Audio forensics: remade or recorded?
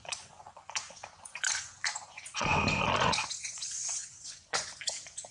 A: remade